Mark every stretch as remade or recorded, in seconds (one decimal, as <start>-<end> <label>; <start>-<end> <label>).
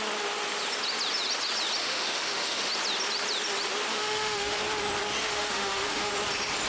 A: 0.0-1.8 recorded; 1.8-2.7 remade; 2.7-3.9 recorded; 3.9-4.6 remade; 4.6-5.2 recorded; 5.2-6.1 remade; 6.1-6.7 recorded